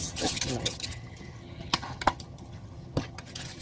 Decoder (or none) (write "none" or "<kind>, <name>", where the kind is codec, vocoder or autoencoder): vocoder, HiFi-GAN